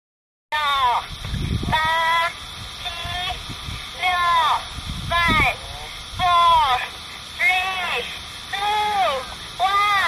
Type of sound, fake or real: real